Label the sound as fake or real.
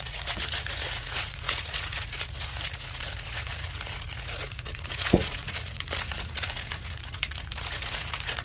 fake